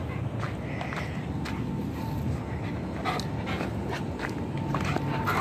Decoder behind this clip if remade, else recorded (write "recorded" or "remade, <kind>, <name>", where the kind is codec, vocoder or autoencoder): recorded